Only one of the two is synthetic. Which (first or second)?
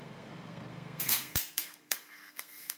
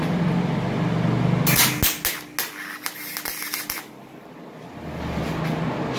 first